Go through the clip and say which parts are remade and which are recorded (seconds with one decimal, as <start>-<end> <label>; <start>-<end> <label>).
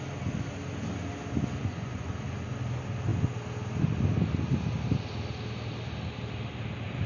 0.0-1.6 recorded; 1.6-2.1 remade; 2.1-7.1 recorded